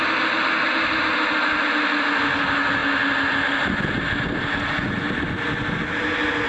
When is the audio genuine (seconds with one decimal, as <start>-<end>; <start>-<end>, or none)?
0.0-6.5